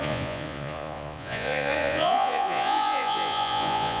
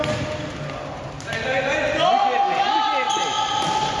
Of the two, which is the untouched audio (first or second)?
second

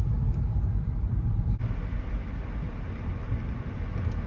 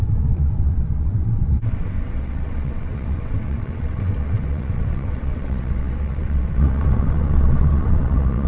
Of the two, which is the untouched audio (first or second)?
first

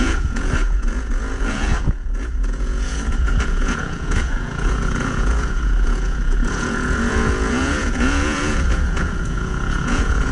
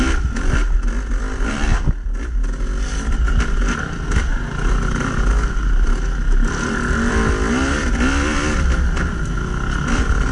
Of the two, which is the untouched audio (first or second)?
second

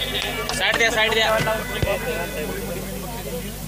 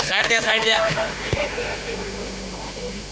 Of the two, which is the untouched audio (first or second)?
first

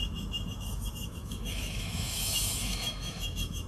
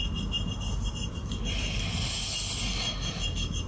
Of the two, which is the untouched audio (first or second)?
second